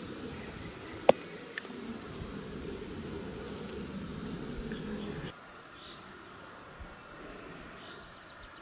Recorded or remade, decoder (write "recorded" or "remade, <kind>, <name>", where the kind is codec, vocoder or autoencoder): recorded